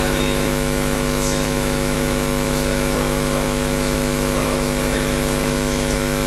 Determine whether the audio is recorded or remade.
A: remade